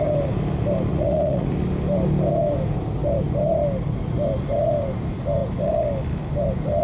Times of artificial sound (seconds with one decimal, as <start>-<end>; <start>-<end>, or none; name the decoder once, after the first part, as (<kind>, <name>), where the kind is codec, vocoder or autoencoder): 0.9-1.5 (vocoder, Vocos)